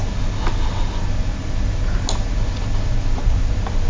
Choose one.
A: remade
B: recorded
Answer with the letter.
B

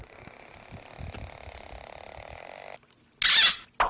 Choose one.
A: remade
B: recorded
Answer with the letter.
B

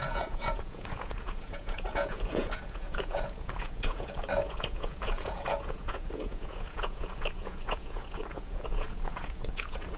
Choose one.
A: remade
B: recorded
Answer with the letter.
A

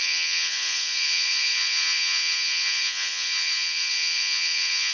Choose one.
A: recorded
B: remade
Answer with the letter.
B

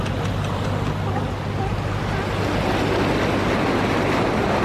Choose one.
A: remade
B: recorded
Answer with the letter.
B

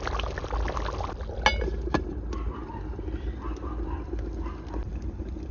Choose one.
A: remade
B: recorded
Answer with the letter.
B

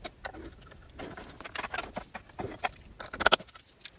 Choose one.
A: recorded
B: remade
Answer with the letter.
A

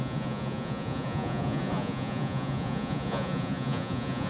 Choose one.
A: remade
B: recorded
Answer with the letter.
A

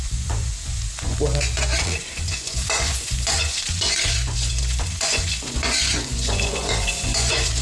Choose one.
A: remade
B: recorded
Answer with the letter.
A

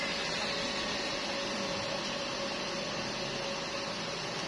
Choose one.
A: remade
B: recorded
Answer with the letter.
B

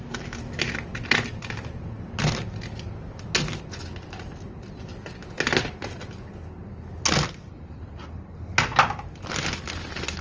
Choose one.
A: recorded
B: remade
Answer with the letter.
A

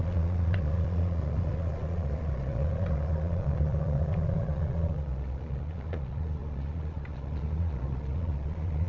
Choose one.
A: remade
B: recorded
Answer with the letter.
A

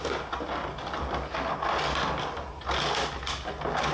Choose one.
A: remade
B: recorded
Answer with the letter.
B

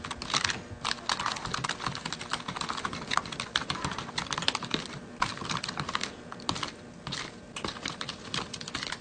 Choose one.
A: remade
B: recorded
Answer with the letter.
B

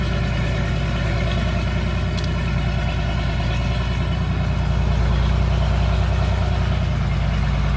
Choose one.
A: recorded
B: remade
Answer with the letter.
A